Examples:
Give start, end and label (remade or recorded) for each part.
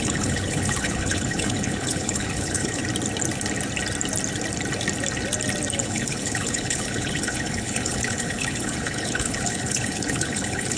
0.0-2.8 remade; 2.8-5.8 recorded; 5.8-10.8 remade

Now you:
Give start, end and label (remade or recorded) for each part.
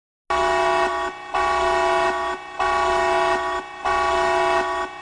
0.0-5.0 recorded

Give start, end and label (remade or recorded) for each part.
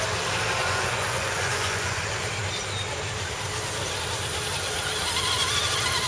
0.0-0.6 recorded; 0.6-2.0 remade; 2.0-6.1 recorded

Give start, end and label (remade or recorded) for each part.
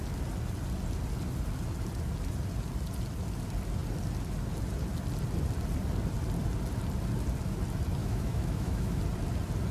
0.0-8.0 recorded; 8.0-9.0 remade; 9.0-9.7 recorded